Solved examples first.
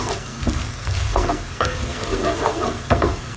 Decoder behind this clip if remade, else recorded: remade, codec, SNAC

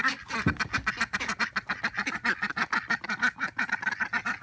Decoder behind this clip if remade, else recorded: recorded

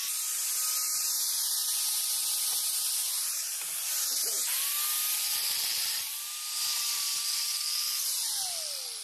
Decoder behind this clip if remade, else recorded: recorded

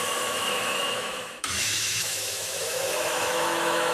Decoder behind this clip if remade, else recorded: remade, autoencoder, DAC-VAE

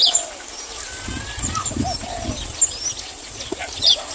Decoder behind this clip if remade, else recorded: recorded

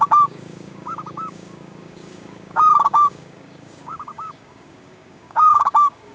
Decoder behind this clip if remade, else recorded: remade, codec, DAC